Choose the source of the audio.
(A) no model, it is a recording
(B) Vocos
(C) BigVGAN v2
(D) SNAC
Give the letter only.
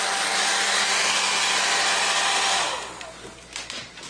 A